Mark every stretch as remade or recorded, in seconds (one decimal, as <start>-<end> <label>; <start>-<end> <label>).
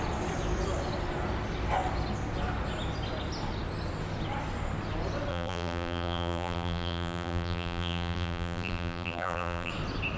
0.0-5.3 recorded; 5.3-9.7 remade; 9.7-10.2 recorded